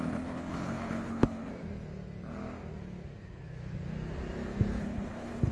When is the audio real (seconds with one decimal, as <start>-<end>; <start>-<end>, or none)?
1.5-4.8